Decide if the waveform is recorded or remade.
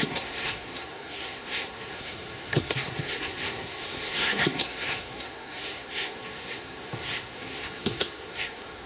remade